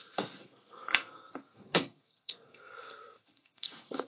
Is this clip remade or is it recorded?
remade